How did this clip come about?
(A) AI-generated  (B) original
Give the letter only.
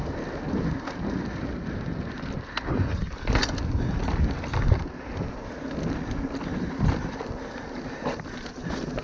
B